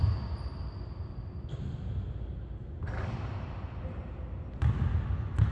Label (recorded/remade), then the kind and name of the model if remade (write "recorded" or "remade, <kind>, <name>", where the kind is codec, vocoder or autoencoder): recorded